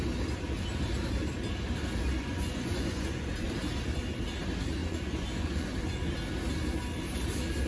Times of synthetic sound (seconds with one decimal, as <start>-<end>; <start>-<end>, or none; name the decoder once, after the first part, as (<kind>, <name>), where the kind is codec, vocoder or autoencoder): 2.2-3.5 (vocoder, Vocos); 4.8-6.0